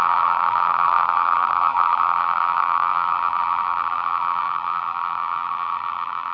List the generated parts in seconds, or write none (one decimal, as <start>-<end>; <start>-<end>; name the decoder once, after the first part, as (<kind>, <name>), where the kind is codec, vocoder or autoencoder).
0.0-6.3 (vocoder, BigVGAN v2)